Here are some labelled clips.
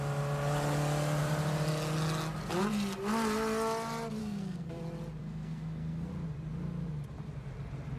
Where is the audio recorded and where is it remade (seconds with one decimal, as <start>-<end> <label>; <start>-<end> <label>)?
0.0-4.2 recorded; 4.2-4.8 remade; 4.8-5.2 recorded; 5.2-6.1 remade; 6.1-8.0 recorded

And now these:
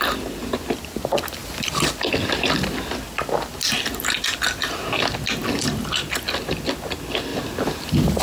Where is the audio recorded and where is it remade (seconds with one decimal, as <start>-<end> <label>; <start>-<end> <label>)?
0.0-8.2 recorded

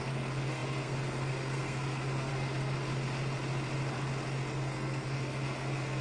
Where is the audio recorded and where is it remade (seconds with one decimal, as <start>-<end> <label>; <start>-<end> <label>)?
0.0-2.8 remade; 2.8-4.5 recorded; 4.5-6.0 remade